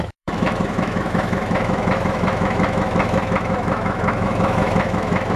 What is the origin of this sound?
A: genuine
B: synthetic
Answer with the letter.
B